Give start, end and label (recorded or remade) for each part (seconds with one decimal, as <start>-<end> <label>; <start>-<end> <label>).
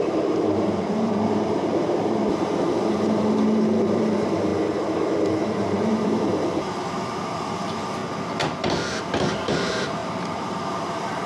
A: 0.0-4.5 remade; 4.5-5.4 recorded; 5.4-8.0 remade; 8.0-9.0 recorded; 9.0-11.3 remade